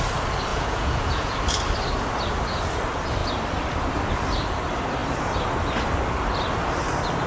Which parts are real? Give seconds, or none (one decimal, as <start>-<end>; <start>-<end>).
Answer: 0.0-0.5; 1.4-7.3